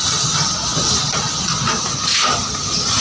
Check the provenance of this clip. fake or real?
real